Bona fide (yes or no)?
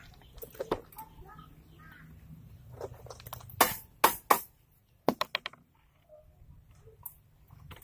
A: yes